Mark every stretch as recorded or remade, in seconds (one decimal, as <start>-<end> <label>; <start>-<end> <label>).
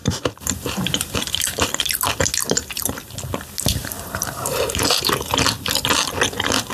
0.0-1.7 remade; 1.7-2.4 recorded; 2.4-3.2 remade; 3.2-3.8 recorded; 3.8-5.4 remade; 5.4-6.7 recorded